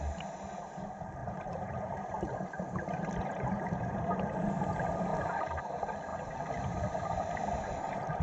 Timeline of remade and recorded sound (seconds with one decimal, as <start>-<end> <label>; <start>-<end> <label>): 0.0-1.2 recorded; 1.2-4.5 remade; 4.5-8.2 recorded